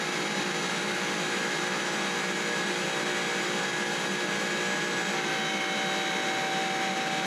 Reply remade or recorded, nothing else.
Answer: recorded